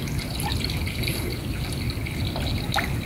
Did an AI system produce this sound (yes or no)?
no